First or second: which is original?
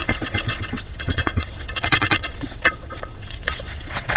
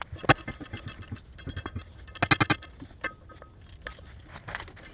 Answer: second